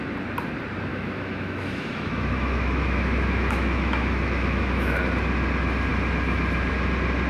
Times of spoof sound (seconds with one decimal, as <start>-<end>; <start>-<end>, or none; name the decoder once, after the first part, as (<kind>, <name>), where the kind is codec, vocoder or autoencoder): 0.9-5.0 (autoencoder, DAC-VAE)